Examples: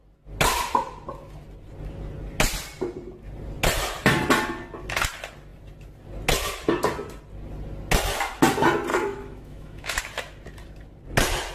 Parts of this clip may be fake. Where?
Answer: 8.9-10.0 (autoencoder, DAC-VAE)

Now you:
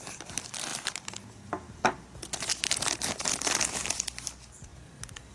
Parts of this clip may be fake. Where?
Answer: 0.0-2.5 (vocoder, BigVGAN v2); 3.0-4.7

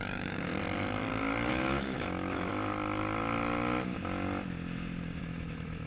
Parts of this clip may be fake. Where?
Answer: 0.0-0.5 (autoencoder, DAC-VAE); 1.5-2.5; 5.2-5.9

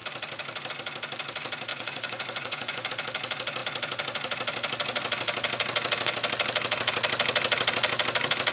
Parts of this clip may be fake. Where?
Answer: 1.7-2.9 (vocoder, Vocos)

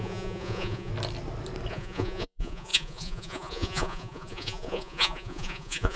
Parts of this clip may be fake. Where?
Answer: 0.0-0.9 (vocoder, Vocos); 1.7-6.0

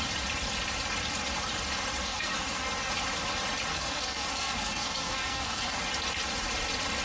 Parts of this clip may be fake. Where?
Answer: 2.0-2.9 (codec, SNAC); 3.7-5.8